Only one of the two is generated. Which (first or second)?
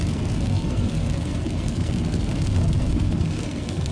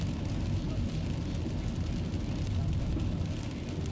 first